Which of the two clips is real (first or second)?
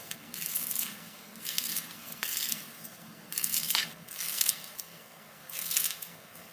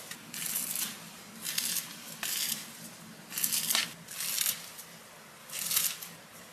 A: second